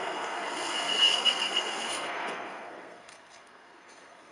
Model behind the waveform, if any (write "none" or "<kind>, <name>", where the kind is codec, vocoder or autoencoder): codec, SNAC